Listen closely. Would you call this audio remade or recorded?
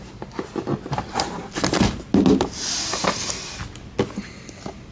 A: recorded